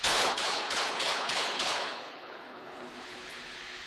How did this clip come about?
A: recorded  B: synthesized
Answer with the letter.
B